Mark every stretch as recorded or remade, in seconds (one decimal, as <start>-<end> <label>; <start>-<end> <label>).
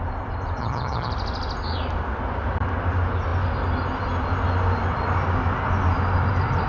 0.0-0.6 recorded; 0.6-1.1 remade; 1.1-6.7 recorded